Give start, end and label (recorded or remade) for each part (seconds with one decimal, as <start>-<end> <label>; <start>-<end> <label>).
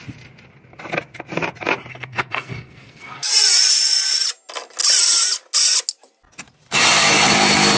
0.0-1.9 recorded; 1.9-3.3 remade; 3.3-7.8 recorded